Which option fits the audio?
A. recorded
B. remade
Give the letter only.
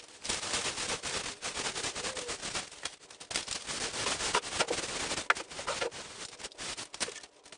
A